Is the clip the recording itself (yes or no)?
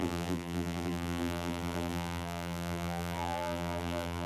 no